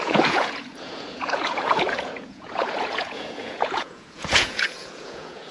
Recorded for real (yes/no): no